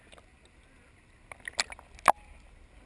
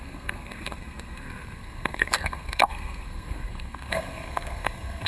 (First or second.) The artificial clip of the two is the second